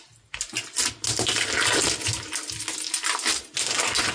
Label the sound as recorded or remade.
recorded